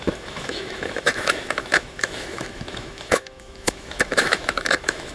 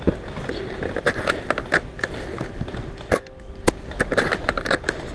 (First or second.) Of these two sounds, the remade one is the first